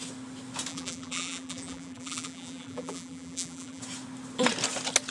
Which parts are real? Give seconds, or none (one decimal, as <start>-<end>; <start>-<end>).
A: 0.0-0.7; 3.8-5.1